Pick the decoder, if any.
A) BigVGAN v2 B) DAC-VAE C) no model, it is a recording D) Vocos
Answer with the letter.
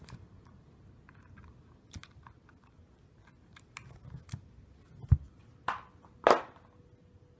C